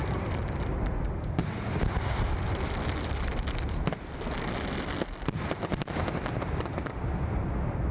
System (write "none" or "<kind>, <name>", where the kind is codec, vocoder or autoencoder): none